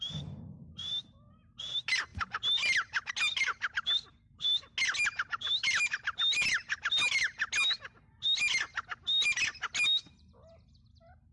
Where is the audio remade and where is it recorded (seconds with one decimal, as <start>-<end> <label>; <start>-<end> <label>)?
0.0-11.3 recorded

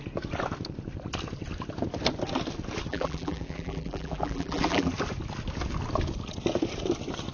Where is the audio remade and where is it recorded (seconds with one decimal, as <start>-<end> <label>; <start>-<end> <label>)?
0.0-2.9 recorded; 2.9-4.9 remade; 4.9-7.3 recorded

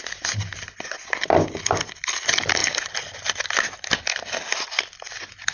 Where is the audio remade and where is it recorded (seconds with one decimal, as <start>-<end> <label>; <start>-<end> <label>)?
0.0-5.5 recorded

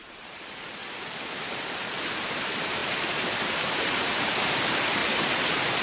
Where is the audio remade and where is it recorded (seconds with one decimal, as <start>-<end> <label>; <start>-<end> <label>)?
0.0-0.8 remade; 0.8-2.1 recorded; 2.1-5.0 remade; 5.0-5.8 recorded

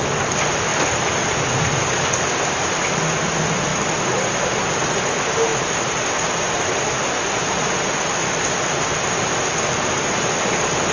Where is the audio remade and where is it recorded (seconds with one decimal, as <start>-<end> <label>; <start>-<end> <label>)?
0.0-0.7 recorded; 0.7-1.2 remade; 1.2-3.7 recorded; 3.7-4.6 remade; 4.6-10.9 recorded

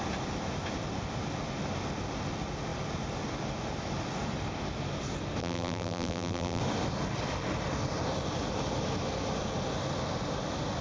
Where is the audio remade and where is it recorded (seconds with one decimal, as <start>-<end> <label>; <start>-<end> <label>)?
0.0-5.4 recorded; 5.4-6.6 remade; 6.6-10.8 recorded